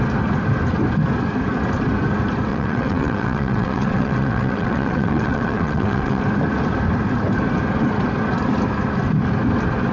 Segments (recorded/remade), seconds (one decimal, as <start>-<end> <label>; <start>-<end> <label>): 0.0-2.5 recorded; 2.5-6.2 remade; 6.2-9.9 recorded